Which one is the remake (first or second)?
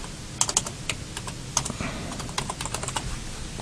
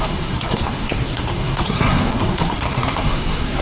second